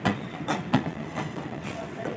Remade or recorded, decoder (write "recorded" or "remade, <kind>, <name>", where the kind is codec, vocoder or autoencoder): remade, vocoder, WaveNeXt